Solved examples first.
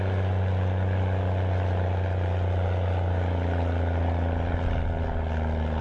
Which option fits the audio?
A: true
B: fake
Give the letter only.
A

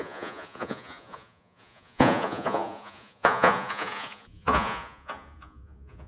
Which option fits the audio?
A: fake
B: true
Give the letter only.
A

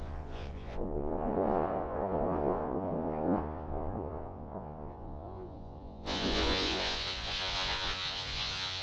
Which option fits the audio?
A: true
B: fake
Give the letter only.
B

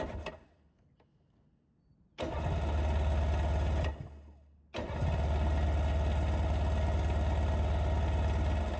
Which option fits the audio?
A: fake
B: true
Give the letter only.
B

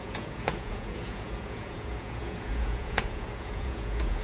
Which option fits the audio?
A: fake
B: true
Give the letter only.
A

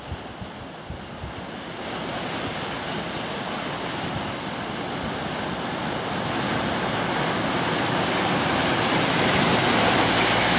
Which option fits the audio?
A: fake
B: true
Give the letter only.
B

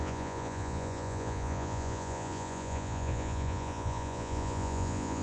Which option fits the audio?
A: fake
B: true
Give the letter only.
A